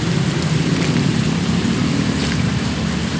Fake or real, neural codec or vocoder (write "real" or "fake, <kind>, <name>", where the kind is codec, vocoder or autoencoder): fake, vocoder, BigVGAN v2